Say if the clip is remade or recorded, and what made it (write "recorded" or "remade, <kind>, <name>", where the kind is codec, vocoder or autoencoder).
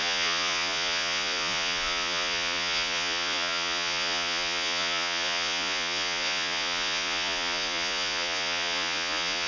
remade, vocoder, Vocos